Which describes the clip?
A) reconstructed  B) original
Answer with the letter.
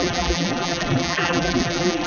A